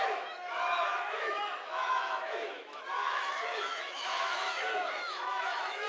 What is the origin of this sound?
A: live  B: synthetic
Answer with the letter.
B